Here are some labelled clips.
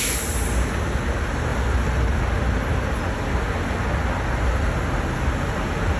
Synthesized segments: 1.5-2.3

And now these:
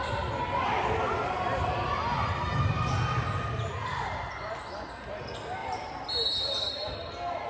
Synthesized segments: 5.6-6.7

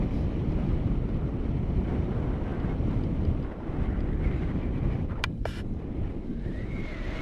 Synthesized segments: none

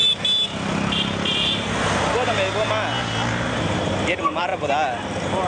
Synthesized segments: 3.3-4.5